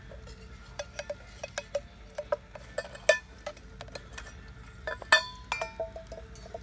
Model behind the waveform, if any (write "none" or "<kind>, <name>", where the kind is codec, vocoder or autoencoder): none